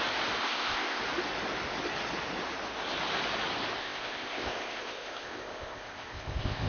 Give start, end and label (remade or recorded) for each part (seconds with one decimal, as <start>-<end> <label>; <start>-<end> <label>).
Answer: 0.0-0.4 recorded; 0.4-1.0 remade; 1.0-3.8 recorded; 3.8-6.7 remade